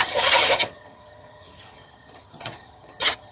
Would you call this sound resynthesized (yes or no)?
yes